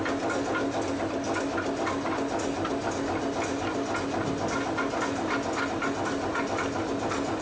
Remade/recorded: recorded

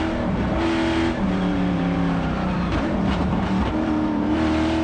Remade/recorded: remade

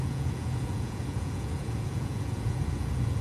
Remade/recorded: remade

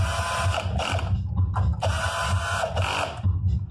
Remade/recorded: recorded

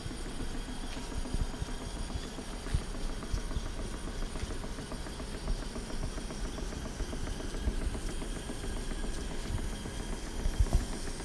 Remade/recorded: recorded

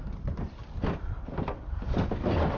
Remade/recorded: recorded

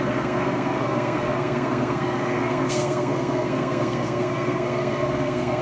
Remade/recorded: remade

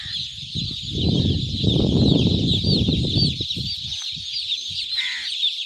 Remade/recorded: remade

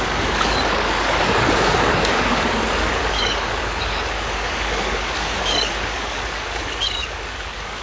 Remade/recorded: remade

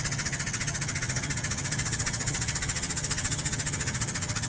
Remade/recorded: remade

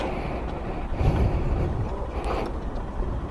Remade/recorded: recorded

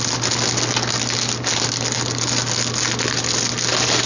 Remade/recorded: recorded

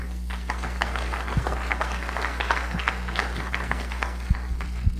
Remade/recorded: remade